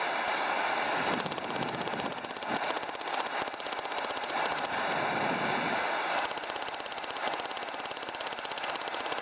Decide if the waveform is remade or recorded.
recorded